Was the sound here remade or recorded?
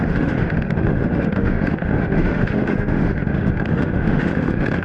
remade